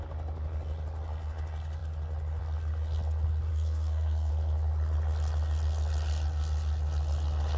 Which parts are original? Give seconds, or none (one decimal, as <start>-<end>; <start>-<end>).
0.0-3.5; 4.3-7.6